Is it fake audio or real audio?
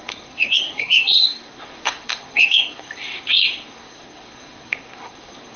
fake